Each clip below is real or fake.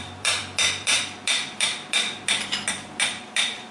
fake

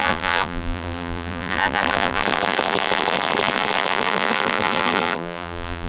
fake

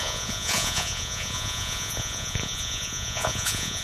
fake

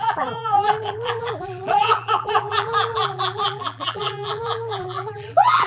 fake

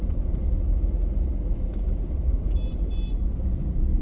real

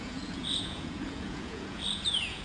fake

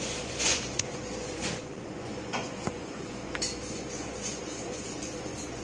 fake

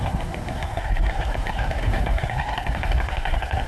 fake